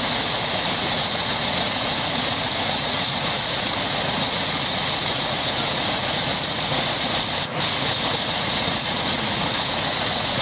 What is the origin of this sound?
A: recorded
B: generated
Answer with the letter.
B